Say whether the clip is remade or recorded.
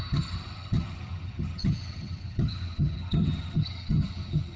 remade